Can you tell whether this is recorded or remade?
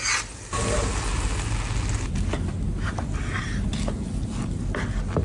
recorded